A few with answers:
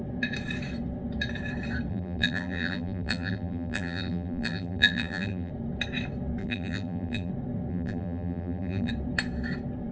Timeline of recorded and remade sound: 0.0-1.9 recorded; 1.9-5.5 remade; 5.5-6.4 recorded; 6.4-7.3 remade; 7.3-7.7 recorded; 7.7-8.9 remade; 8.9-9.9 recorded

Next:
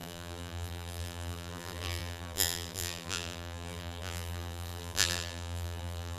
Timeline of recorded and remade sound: 0.0-6.2 remade